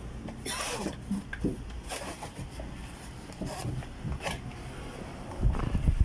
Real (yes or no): yes